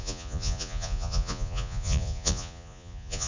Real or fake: fake